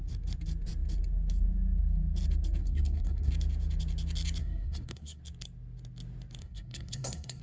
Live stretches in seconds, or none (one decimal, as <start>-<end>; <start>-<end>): 0.0-2.6; 3.3-4.4; 5.2-6.4